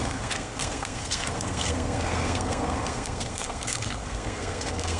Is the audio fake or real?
fake